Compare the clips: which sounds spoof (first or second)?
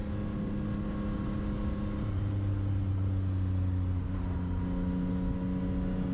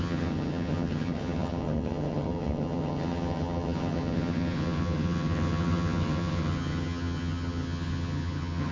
second